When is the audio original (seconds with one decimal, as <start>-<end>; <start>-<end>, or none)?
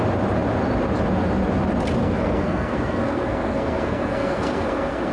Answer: 0.0-2.0